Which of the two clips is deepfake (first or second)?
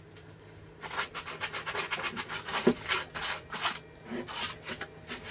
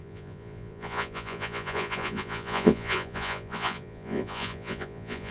second